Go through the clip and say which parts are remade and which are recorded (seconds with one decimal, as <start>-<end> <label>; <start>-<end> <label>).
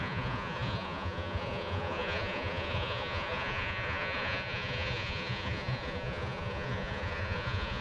0.0-7.8 remade